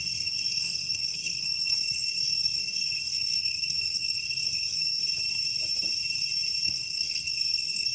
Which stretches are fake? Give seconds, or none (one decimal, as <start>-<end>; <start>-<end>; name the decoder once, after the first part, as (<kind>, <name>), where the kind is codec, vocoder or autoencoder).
0.0-5.0 (codec, SNAC); 6.6-7.9